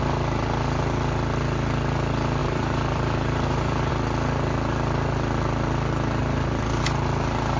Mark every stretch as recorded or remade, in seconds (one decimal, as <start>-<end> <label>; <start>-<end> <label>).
0.0-2.4 recorded; 2.4-3.9 remade; 3.9-6.2 recorded; 6.2-6.8 remade; 6.8-7.6 recorded